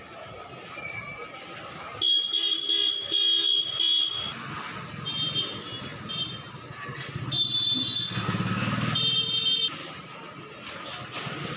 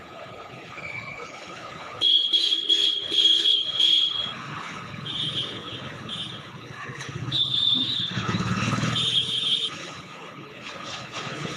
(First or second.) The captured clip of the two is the first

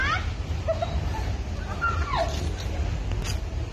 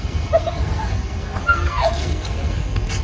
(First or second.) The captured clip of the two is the first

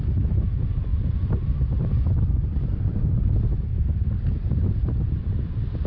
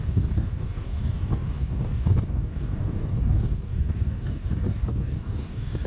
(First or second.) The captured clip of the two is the first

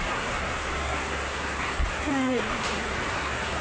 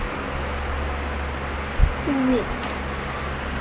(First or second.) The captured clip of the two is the second